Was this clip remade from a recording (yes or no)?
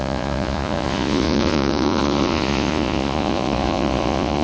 yes